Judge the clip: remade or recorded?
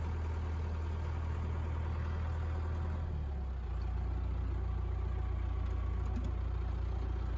recorded